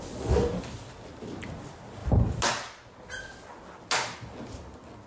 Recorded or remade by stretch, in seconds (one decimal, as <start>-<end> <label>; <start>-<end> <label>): 0.0-5.1 recorded